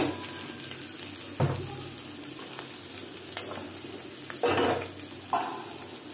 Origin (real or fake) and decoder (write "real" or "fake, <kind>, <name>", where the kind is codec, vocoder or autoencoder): real